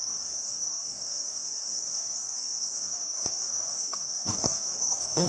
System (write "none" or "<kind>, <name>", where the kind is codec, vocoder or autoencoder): codec, DAC